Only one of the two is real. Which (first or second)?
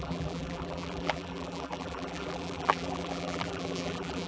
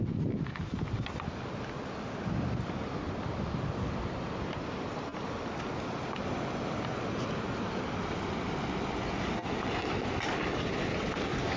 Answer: second